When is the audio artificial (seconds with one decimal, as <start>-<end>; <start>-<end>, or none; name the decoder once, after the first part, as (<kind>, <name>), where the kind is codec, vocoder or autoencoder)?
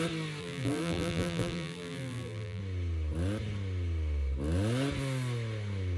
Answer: 0.4-2.6 (vocoder, BigVGAN v2)